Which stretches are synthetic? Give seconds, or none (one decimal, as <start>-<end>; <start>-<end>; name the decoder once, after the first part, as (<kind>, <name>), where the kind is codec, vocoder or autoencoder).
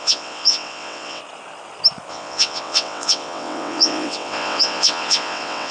0.0-1.2 (vocoder, WaveNeXt); 2.1-5.7